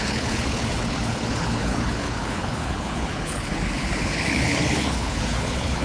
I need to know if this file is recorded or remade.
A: remade